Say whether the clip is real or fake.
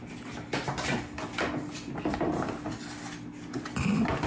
real